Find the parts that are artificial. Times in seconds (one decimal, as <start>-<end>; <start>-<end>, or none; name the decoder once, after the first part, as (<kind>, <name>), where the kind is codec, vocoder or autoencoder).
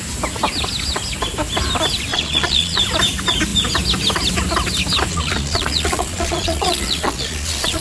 2.1-2.8 (vocoder, Vocos); 5.1-7.8